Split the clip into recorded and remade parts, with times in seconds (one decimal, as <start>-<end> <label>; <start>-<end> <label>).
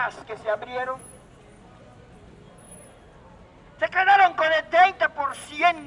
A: 0.0-0.4 recorded; 0.4-1.0 remade; 1.0-5.9 recorded